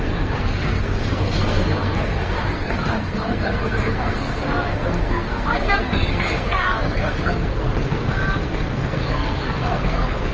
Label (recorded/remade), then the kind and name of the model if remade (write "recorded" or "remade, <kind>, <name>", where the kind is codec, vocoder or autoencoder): remade, codec, SNAC